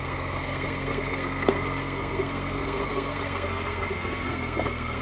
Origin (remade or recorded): remade